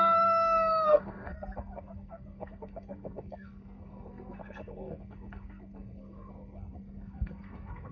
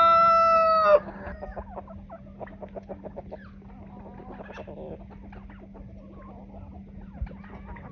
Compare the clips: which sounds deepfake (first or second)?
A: first